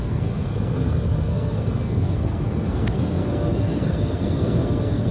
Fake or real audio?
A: fake